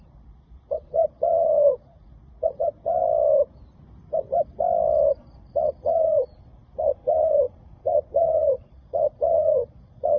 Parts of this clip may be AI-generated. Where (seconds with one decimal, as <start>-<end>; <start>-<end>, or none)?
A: 0.0-3.0; 5.1-10.2